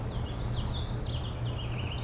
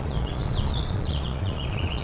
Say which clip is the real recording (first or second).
first